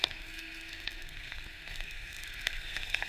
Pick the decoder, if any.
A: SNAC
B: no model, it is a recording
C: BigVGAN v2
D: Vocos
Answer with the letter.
A